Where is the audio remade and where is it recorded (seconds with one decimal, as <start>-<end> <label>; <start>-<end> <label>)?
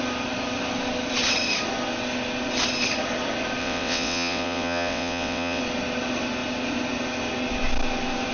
0.0-3.6 recorded; 3.6-5.6 remade; 5.6-8.3 recorded